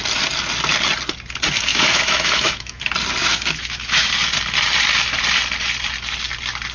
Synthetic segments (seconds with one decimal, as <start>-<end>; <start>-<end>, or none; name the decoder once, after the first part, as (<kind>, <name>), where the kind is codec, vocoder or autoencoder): 1.7-2.8 (autoencoder, DAC-VAE); 3.2-4.1